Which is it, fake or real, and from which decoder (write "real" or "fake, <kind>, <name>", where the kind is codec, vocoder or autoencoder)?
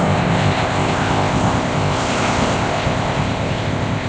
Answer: fake, codec, ZipCodec